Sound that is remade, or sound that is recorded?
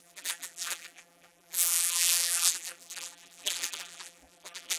remade